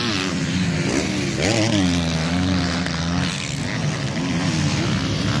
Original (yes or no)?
yes